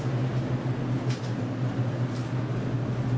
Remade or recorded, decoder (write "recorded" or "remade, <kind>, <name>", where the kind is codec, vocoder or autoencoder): recorded